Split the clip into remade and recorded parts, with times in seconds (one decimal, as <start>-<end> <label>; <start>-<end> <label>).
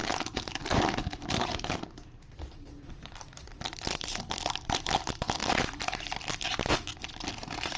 0.0-4.5 remade; 4.5-5.4 recorded; 5.4-6.7 remade; 6.7-7.8 recorded